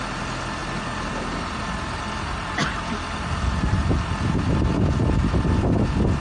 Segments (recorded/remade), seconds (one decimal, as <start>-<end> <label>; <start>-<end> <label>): 0.0-6.2 recorded